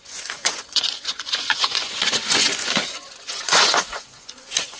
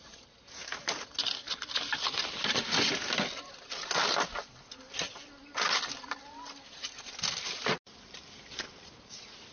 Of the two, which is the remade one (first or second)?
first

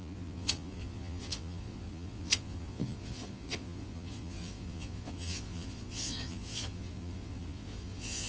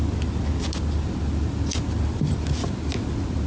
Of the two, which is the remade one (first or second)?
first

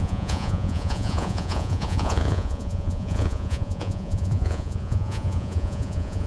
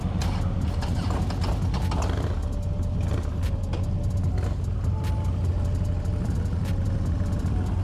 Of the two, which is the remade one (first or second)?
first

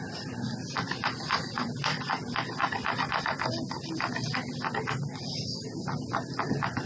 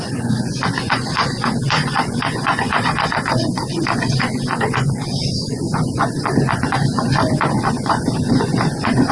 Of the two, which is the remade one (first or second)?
second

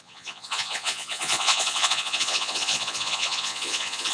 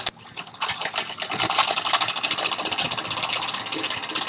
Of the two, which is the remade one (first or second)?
first